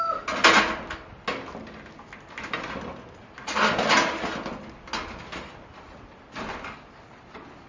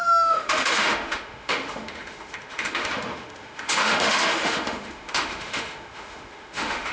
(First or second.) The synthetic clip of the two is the second